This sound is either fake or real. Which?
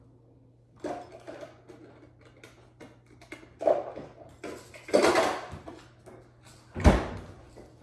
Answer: real